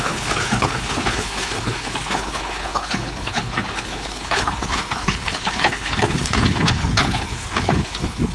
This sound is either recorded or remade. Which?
remade